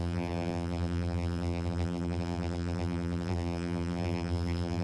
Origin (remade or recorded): remade